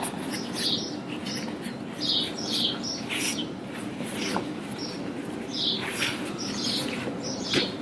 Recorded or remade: recorded